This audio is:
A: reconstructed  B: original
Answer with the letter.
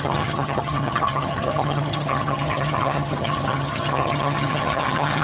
A